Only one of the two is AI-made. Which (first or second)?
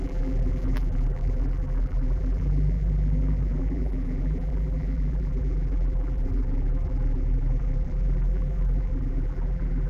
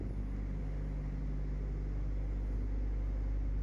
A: first